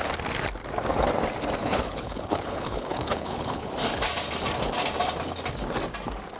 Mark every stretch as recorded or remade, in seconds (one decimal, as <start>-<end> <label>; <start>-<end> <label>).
0.0-1.6 recorded; 1.6-3.7 remade; 3.7-6.4 recorded